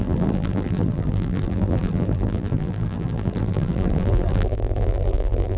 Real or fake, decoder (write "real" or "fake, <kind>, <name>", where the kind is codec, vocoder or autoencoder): fake, vocoder, BigVGAN v2